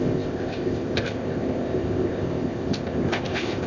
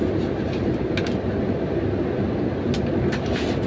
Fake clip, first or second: first